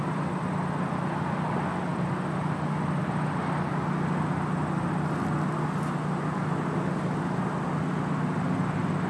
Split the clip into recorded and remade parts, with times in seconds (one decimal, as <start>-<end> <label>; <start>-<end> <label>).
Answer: 0.0-9.1 recorded